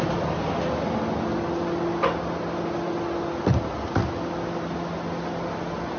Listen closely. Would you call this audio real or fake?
real